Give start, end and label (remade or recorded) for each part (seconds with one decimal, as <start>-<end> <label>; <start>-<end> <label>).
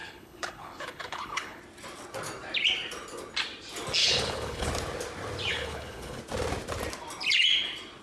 0.0-1.6 remade; 1.6-4.0 recorded; 4.0-4.7 remade; 4.7-5.5 recorded; 5.5-6.2 remade; 6.2-8.0 recorded